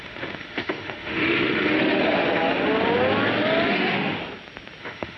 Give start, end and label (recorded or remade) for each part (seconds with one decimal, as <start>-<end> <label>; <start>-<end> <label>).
0.0-2.0 remade; 2.0-3.7 recorded; 3.7-4.2 remade; 4.2-4.8 recorded; 4.8-5.2 remade